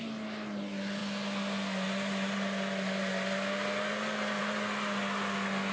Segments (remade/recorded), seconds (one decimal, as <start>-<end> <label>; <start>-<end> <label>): 0.0-5.7 recorded